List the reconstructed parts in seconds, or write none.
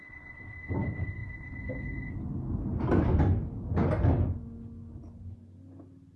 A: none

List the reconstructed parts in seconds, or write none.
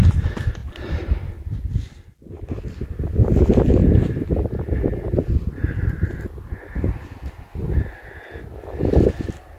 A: none